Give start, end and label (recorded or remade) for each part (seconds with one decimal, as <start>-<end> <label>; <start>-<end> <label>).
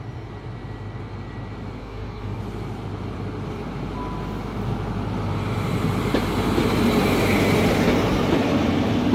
0.0-1.8 recorded; 1.8-2.4 remade; 2.4-9.1 recorded